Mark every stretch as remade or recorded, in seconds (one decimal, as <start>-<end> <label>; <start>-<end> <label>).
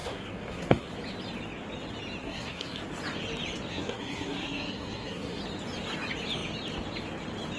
0.0-0.9 remade; 0.9-2.2 recorded; 2.2-2.8 remade; 2.8-3.7 recorded; 3.7-5.4 remade; 5.4-7.6 recorded